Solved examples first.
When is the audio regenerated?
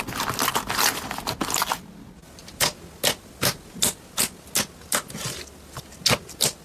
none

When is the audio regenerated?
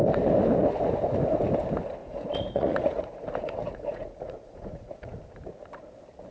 2.0-5.2 (vocoder, Vocos)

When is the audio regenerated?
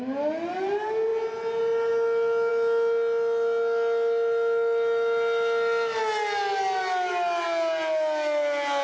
none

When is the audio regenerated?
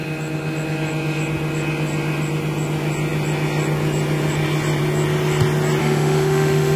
5.8-6.8 (autoencoder, DAC-VAE)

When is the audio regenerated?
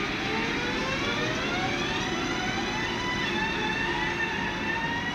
none